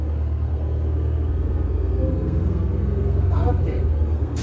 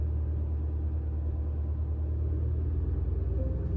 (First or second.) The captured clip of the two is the second